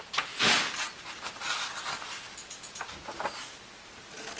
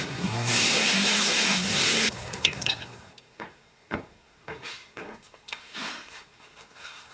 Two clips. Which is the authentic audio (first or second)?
first